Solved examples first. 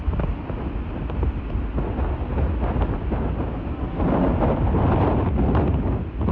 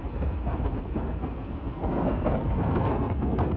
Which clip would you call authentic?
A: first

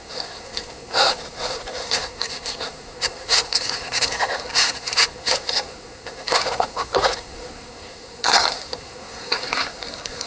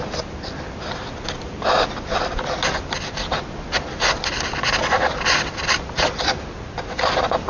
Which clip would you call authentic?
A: second